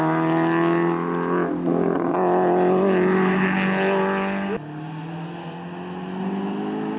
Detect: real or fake real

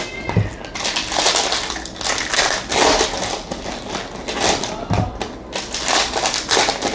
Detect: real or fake real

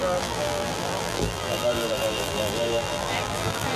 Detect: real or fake fake